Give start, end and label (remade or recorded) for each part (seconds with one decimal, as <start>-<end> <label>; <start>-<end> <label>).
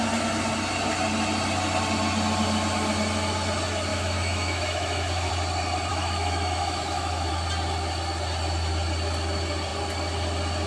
0.0-3.9 recorded; 3.9-5.3 remade; 5.3-5.9 recorded; 5.9-7.3 remade; 7.3-10.7 recorded